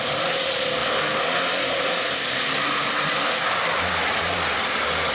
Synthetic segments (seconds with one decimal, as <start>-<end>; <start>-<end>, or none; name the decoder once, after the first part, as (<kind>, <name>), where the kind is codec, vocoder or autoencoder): none